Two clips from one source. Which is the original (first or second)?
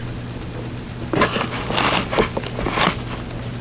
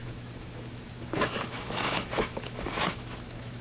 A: first